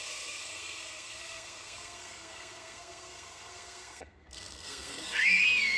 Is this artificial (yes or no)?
yes